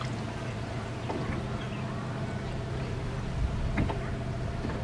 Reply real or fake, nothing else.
real